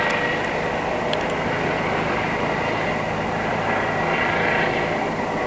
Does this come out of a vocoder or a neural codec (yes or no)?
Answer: no